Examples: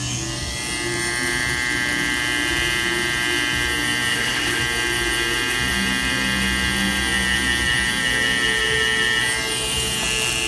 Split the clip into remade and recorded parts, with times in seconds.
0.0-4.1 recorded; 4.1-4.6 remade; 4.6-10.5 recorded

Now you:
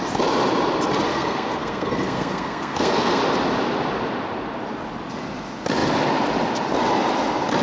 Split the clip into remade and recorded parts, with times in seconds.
0.0-1.1 recorded; 1.1-3.2 remade; 3.2-7.6 recorded

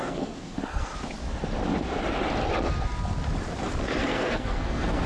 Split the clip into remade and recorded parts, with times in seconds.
0.0-0.9 remade; 0.9-4.0 recorded; 4.0-5.1 remade

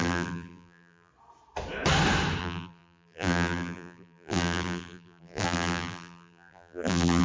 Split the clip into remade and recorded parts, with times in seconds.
0.0-1.1 remade; 1.1-2.4 recorded; 2.4-7.2 remade